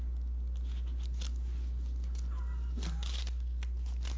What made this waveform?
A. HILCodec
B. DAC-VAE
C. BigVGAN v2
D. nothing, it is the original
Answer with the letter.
D